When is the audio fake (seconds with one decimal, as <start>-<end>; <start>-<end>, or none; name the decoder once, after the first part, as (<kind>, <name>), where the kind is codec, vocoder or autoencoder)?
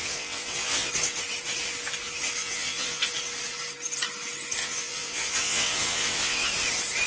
0.0-0.9 (vocoder, WaveNeXt); 2.4-3.1; 4.6-6.5